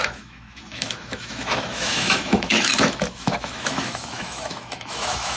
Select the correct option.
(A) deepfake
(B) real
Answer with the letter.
A